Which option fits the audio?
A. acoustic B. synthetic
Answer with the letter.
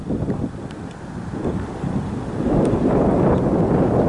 A